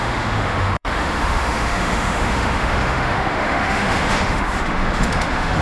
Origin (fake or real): fake